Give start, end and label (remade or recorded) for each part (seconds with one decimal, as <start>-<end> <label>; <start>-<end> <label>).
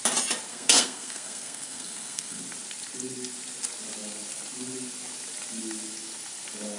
0.0-0.5 recorded; 0.5-2.4 remade; 2.4-6.8 recorded